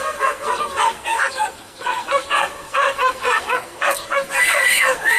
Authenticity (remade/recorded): remade